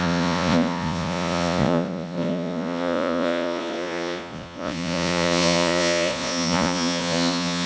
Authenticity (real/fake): fake